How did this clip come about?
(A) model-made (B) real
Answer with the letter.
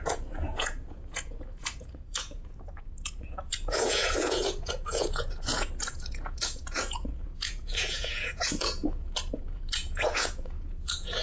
A